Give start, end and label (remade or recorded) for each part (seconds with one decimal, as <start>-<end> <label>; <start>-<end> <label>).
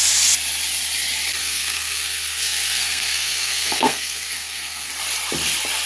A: 0.0-1.4 recorded; 1.4-4.9 remade; 4.9-5.9 recorded